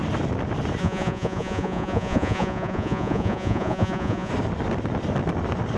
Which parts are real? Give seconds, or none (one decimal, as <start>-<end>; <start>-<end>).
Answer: 0.0-0.8; 4.3-5.8